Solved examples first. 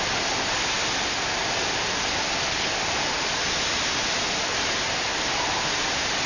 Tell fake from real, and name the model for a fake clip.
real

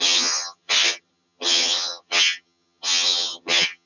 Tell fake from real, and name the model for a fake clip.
fake, vocoder, HiFi-GAN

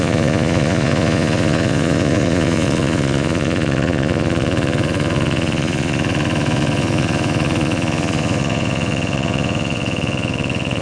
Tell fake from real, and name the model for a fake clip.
fake, vocoder, Vocos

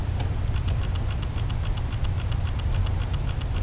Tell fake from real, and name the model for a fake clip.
real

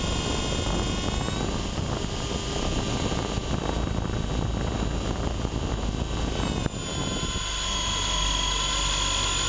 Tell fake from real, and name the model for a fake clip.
real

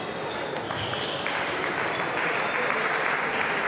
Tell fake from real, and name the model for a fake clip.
real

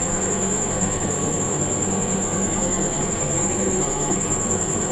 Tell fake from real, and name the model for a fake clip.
fake, codec, SNAC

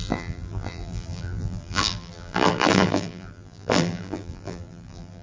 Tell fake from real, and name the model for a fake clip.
fake, vocoder, BigVGAN v2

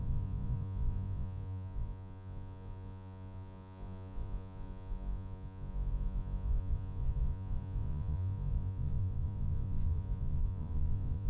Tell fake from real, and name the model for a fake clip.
fake, vocoder, Vocos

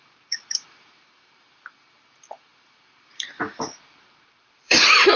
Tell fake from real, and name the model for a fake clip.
fake, vocoder, BigVGAN v2